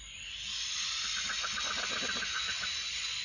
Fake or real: real